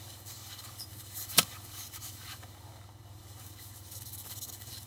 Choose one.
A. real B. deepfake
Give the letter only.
B